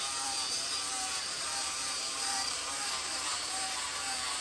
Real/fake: fake